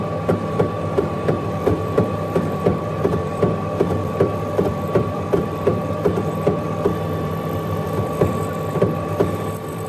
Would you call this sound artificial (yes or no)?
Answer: yes